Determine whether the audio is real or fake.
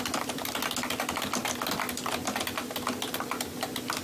real